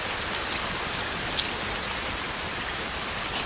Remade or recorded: recorded